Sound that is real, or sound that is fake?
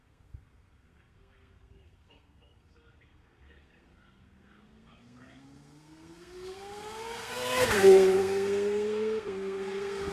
fake